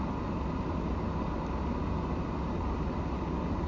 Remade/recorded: recorded